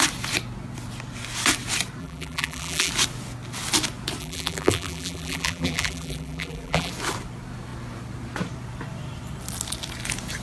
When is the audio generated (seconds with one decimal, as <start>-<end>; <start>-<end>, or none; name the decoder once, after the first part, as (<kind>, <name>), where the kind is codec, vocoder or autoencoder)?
2.0-2.9 (vocoder, BigVGAN v2); 4.2-6.9